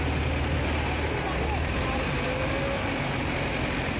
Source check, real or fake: real